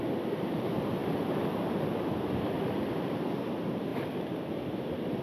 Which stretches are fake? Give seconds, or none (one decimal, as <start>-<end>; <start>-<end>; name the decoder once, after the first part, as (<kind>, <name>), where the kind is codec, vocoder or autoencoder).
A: 1.0-3.5 (vocoder, BigVGAN v2)